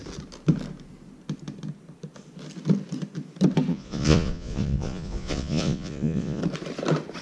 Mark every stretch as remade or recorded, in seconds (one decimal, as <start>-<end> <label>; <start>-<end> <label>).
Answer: 0.0-3.7 recorded; 3.7-6.4 remade; 6.4-7.2 recorded